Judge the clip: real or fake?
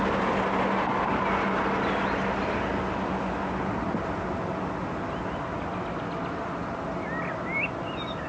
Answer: real